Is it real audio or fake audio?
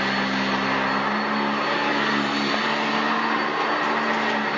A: real